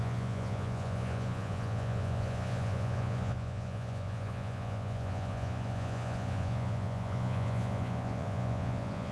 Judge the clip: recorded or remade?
remade